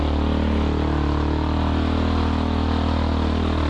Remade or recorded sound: recorded